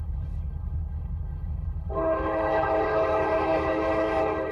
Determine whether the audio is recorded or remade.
remade